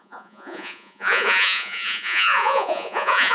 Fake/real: fake